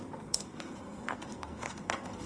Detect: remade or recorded remade